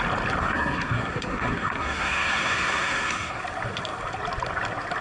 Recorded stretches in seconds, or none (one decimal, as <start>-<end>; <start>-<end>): 0.0-0.4; 3.4-5.0